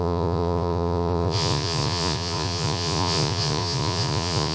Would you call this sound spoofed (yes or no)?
yes